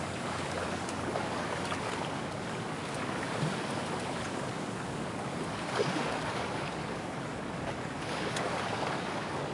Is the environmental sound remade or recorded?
remade